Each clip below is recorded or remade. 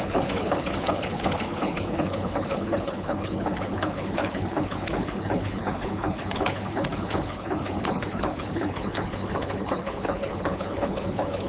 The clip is remade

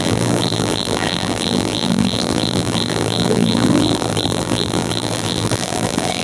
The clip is remade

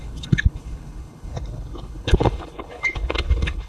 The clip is remade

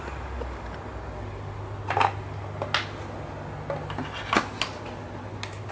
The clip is recorded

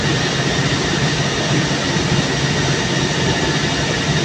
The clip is recorded